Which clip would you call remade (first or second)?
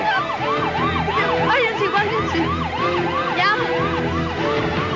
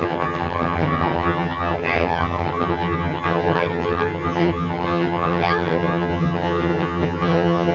second